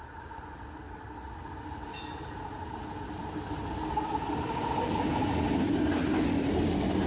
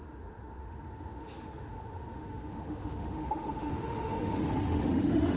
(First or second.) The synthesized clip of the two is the second